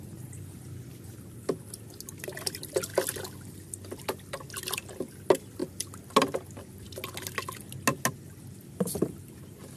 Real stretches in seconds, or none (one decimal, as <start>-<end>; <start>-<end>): 0.0-9.8